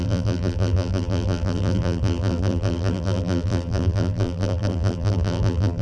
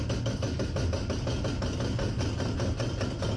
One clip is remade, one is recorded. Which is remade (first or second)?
first